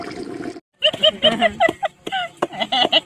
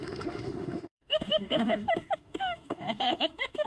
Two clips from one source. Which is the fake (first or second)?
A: second